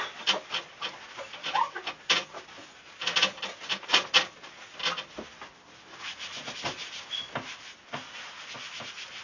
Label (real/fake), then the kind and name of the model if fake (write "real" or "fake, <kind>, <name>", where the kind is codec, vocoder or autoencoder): real